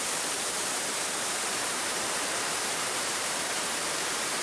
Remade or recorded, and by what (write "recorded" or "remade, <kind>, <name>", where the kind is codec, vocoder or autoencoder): remade, vocoder, BigVGAN v2